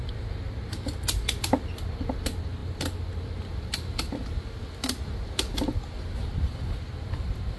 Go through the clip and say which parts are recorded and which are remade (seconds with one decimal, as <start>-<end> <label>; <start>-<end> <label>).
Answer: 0.0-7.6 recorded